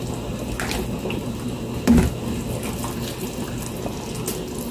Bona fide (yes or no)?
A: yes